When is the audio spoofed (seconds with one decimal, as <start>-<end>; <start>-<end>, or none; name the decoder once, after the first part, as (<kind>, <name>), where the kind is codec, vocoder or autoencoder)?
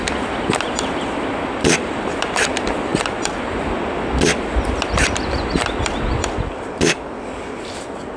none